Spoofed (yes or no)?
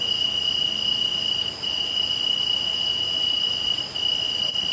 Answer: no